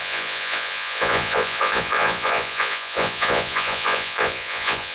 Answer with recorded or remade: remade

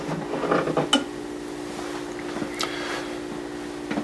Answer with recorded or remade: recorded